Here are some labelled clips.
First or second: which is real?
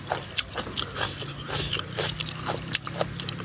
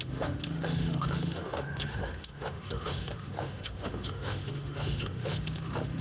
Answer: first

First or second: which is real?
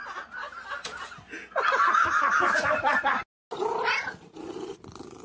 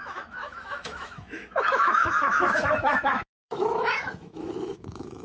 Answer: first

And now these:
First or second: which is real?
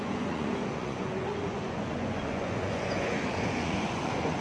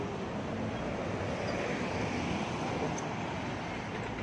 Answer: second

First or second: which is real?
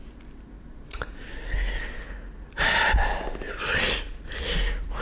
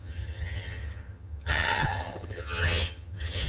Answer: first